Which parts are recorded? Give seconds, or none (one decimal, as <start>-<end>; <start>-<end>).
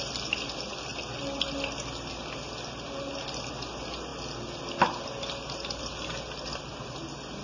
0.0-7.4